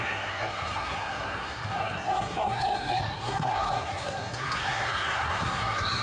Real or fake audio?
fake